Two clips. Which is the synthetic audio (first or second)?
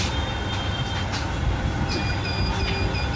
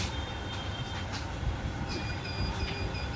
second